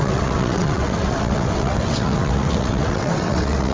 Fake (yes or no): yes